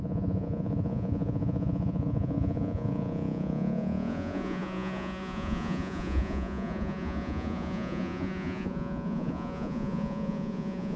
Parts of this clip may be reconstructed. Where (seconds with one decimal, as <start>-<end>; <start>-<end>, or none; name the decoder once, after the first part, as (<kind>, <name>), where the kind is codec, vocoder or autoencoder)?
0.0-11.0 (vocoder, Vocos)